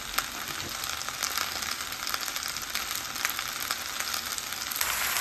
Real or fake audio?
real